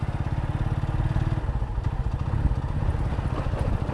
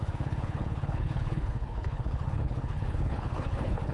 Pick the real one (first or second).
first